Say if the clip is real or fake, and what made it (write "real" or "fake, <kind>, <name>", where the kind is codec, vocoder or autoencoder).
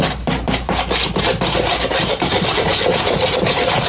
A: fake, vocoder, BigVGAN v2